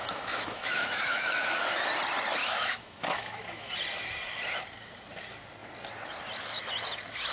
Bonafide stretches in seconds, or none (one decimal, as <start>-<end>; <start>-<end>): 1.8-2.4; 3.7-7.3